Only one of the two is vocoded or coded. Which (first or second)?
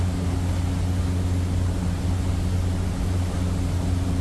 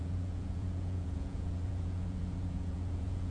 second